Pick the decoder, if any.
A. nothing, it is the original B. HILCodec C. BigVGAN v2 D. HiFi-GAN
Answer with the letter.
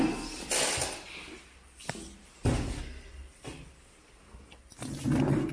A